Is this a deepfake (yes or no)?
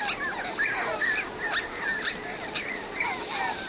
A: no